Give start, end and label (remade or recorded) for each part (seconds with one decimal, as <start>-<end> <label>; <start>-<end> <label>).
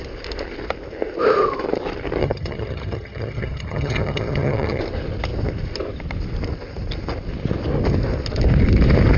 0.0-2.2 recorded; 2.2-4.8 remade; 4.8-9.2 recorded